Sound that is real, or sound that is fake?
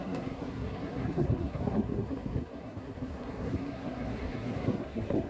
fake